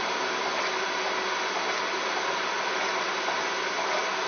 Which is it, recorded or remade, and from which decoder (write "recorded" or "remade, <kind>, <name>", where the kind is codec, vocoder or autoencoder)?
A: recorded